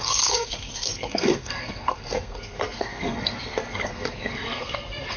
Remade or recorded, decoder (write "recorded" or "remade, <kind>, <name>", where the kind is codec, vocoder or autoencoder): remade, codec, SNAC